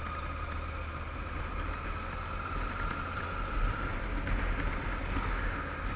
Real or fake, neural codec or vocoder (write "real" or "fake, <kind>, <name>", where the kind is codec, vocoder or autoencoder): real